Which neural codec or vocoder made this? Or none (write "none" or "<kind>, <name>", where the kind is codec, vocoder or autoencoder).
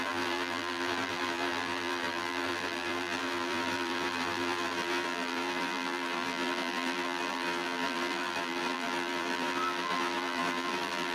vocoder, BigVGAN v2